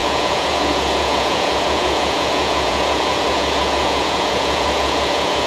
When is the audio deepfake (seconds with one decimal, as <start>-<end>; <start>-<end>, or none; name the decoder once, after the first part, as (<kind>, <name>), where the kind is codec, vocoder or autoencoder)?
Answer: 0.0-5.5 (vocoder, Vocos)